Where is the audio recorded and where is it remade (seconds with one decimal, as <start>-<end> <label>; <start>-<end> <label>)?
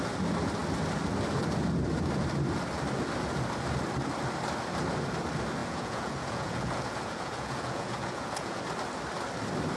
0.0-5.6 recorded; 5.6-8.6 remade; 8.6-9.8 recorded